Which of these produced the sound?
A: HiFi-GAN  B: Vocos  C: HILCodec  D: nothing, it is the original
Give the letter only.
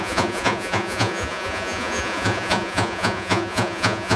B